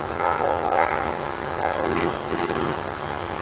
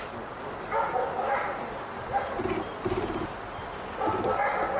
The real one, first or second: second